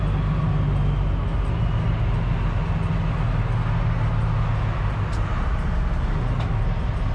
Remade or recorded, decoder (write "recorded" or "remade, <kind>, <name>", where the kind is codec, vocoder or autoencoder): recorded